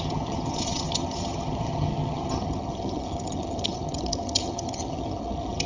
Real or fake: fake